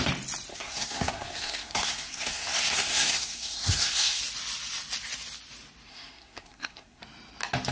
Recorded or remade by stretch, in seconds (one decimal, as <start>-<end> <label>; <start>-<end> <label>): 0.0-0.5 recorded; 0.5-4.2 remade; 4.2-5.9 recorded; 5.9-7.0 remade; 7.0-7.7 recorded